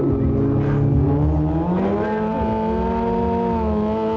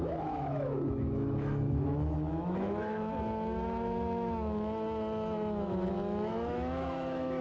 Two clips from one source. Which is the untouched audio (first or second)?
first